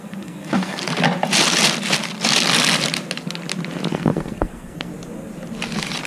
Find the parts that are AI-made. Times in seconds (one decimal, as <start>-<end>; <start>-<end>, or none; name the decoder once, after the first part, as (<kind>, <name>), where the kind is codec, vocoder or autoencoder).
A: 0.0-0.8 (codec, SNAC); 3.9-4.9